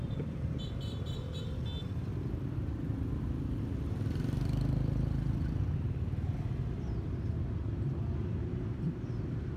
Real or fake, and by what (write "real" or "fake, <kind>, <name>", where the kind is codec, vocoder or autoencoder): real